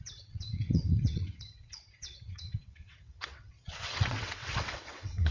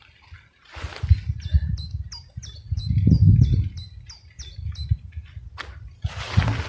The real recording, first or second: second